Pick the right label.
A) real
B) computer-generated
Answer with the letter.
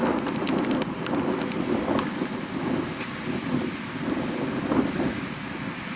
A